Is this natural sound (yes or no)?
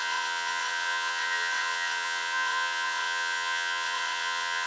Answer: no